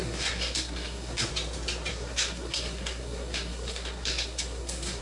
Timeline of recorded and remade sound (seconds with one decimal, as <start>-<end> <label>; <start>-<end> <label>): 0.0-1.3 remade; 1.3-1.9 recorded; 1.9-5.0 remade